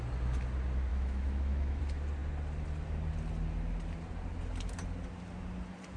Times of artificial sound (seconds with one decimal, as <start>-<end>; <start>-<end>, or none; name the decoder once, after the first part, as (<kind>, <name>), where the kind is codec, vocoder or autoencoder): 0.9-1.8 (autoencoder, DAC-VAE)